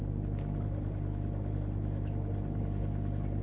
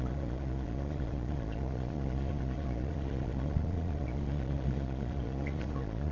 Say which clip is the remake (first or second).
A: second